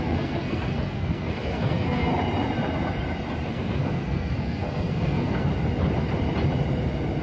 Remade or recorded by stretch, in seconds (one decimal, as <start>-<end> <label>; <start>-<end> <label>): 0.0-2.1 remade; 2.1-3.5 recorded; 3.5-5.5 remade; 5.5-7.2 recorded

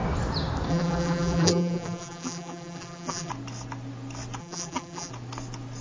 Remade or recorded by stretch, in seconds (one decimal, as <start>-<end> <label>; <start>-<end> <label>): 0.0-0.7 recorded; 0.7-3.3 remade; 3.3-4.4 recorded; 4.4-5.1 remade; 5.1-5.8 recorded

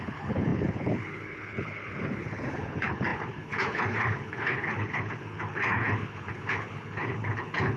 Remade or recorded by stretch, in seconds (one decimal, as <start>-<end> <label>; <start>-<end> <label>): 0.0-7.8 remade

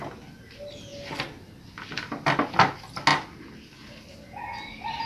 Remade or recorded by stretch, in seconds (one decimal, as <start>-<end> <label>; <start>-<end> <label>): 0.0-5.1 recorded

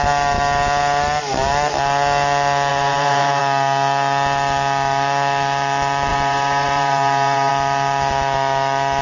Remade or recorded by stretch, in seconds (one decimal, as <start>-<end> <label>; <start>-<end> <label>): 0.0-2.7 recorded; 2.7-3.4 remade; 3.4-6.1 recorded; 6.1-7.5 remade; 7.5-9.0 recorded

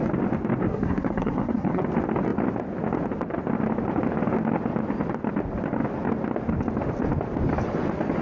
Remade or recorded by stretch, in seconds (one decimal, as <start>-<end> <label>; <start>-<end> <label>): 0.0-0.7 recorded; 0.7-1.8 remade; 1.8-8.2 recorded

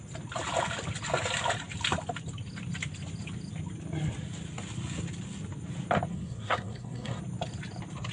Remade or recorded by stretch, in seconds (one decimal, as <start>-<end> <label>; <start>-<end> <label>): 0.0-6.1 recorded; 6.1-7.2 remade; 7.2-8.1 recorded

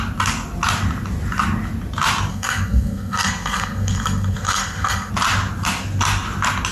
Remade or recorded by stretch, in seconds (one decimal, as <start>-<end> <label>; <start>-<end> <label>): 0.0-2.3 recorded; 2.3-5.1 remade; 5.1-6.7 recorded